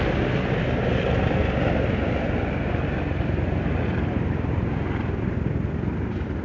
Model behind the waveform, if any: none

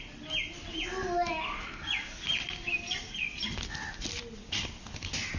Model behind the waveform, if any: none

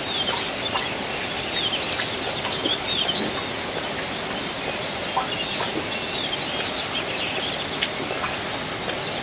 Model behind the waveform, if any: none